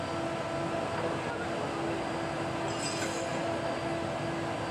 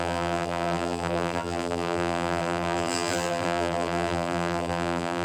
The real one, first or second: first